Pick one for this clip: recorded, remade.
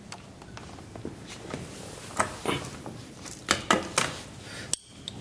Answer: recorded